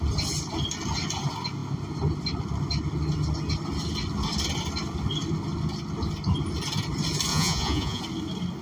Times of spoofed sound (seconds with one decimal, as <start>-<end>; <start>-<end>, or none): 7.3-8.0